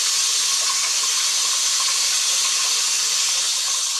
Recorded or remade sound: recorded